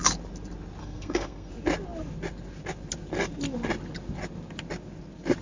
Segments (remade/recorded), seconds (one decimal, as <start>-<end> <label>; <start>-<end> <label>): 0.0-0.8 recorded; 0.8-1.5 remade; 1.5-5.4 recorded